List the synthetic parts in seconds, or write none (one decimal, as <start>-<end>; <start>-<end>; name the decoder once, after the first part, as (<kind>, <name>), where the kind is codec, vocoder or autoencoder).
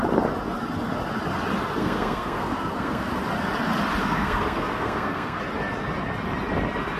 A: 1.8-3.1 (codec, SNAC); 4.0-5.4